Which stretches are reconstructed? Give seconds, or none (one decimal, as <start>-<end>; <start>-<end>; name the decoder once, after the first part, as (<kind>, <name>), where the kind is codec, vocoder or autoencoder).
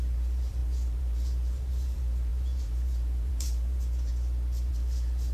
0.0-4.1 (vocoder, BigVGAN v2); 4.7-5.3